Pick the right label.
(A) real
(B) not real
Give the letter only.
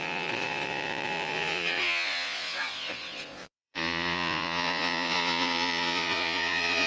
B